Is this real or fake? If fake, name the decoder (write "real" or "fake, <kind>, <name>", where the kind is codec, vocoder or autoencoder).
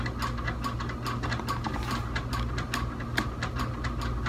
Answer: real